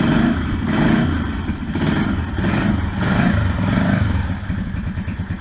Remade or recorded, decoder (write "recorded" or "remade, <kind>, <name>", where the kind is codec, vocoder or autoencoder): remade, vocoder, BigVGAN v2